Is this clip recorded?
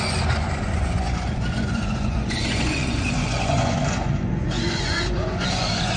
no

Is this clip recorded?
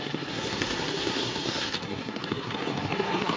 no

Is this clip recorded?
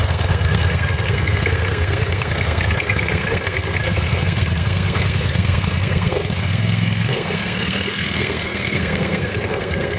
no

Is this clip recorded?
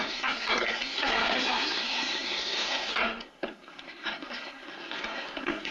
no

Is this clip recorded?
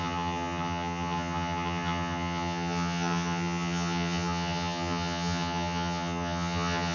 no